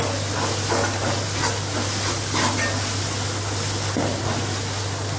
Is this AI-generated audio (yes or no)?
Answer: no